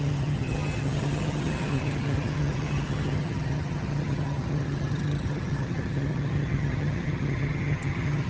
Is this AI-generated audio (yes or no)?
yes